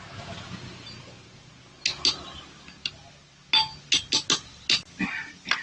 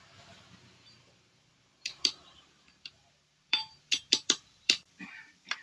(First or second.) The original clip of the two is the first